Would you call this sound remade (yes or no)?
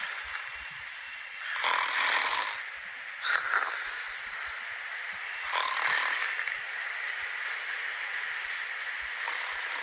no